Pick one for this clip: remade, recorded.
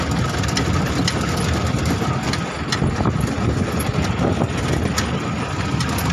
recorded